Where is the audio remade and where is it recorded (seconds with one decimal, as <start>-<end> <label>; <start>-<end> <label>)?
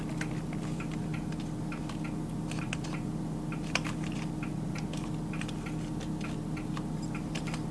0.0-7.7 recorded